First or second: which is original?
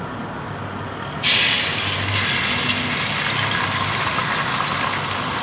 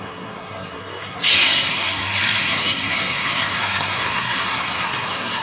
first